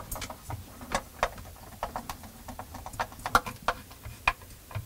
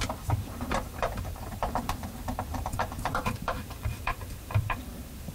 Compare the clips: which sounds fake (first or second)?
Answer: second